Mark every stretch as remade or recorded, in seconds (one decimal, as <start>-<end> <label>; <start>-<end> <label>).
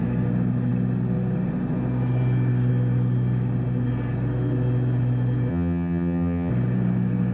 0.0-5.5 recorded; 5.5-6.5 remade; 6.5-7.3 recorded